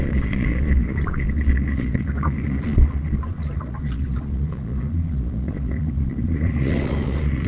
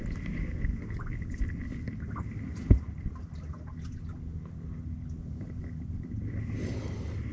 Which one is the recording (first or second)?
second